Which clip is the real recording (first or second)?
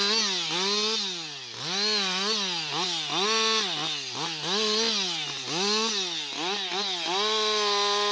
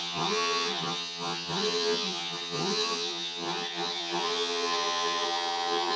first